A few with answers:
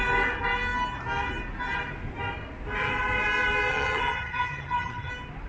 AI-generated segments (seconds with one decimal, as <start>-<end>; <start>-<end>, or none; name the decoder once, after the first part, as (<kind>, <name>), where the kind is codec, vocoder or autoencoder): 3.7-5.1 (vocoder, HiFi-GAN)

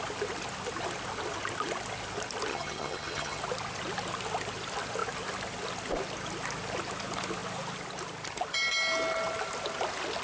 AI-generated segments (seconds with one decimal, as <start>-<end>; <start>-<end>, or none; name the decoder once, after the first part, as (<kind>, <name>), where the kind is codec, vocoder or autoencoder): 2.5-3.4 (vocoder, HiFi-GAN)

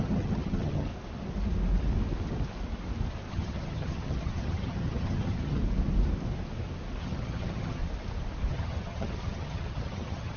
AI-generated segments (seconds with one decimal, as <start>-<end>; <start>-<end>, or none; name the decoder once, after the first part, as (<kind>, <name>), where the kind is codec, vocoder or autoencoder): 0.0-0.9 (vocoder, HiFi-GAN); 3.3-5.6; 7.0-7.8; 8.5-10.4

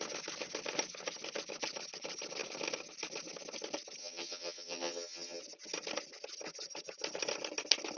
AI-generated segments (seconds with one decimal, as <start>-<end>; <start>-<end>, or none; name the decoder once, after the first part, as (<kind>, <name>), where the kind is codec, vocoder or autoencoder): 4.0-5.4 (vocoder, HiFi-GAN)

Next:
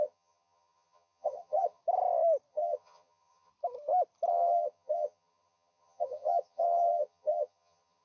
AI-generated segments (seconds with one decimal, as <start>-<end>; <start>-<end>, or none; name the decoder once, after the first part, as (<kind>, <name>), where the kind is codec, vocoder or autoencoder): 0.0-1.8 (vocoder, HiFi-GAN); 2.5-3.5; 4.3-8.0

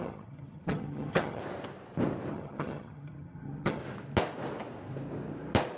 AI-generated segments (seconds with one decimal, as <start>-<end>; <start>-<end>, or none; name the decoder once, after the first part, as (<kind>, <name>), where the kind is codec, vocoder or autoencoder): 0.0-1.4 (vocoder, HiFi-GAN); 2.3-3.8